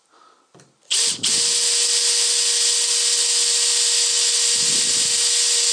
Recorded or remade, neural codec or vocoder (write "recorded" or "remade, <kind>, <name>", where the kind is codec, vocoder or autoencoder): recorded